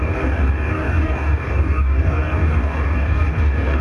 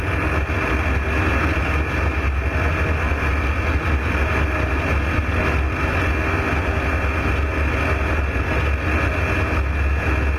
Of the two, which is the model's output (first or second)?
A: first